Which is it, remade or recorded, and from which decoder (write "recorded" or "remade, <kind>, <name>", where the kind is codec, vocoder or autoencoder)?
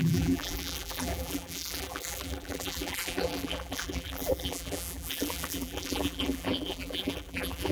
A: remade, vocoder, BigVGAN v2